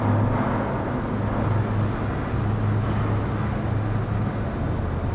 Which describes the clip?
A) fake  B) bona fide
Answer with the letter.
B